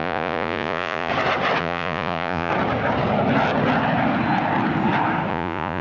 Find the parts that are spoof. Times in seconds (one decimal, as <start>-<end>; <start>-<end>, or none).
0.0-1.1; 1.6-2.5; 5.3-5.8